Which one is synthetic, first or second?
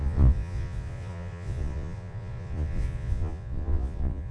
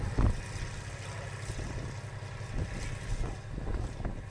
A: first